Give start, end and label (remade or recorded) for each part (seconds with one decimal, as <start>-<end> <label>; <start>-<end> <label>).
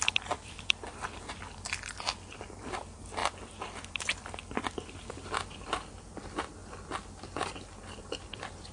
0.0-3.2 remade; 3.2-3.9 recorded; 3.9-6.6 remade; 6.6-7.8 recorded; 7.8-8.7 remade